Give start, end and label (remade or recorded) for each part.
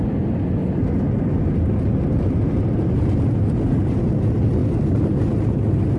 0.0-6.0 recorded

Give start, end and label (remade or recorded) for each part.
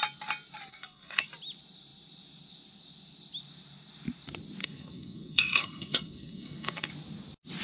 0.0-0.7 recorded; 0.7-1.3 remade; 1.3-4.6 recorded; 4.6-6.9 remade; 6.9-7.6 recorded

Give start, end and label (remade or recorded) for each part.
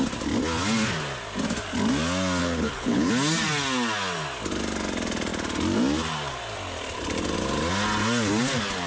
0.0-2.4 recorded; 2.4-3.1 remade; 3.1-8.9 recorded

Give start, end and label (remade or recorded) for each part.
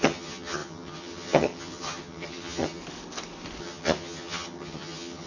0.0-2.8 remade; 2.8-3.6 recorded; 3.6-5.3 remade